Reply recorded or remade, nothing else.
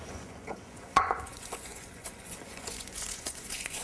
remade